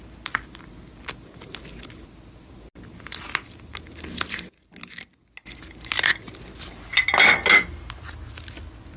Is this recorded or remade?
recorded